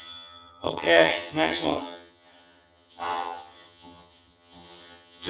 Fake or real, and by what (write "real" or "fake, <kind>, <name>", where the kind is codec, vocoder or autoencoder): fake, vocoder, HiFi-GAN